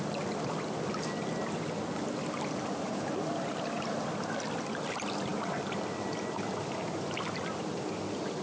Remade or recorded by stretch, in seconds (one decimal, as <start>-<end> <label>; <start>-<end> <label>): 0.0-8.4 recorded